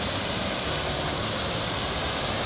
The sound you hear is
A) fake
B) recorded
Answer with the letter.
B